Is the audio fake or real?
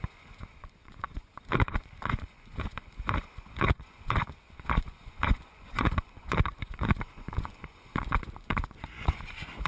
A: fake